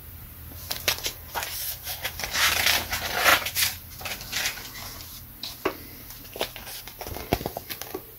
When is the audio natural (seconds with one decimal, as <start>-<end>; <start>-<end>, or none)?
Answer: 2.6-8.2